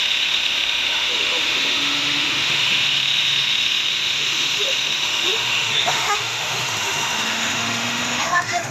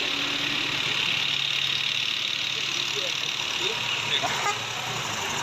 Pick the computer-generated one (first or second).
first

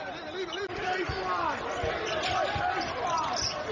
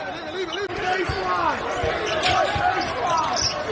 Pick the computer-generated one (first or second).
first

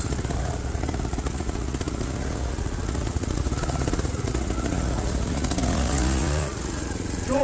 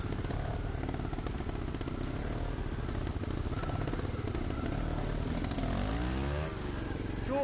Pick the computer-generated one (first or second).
first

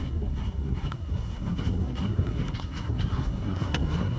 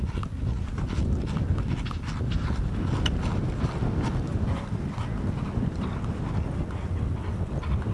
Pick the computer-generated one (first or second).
first